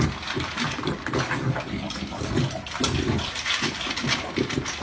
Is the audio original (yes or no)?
yes